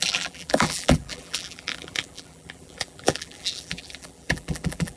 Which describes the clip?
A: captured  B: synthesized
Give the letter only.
B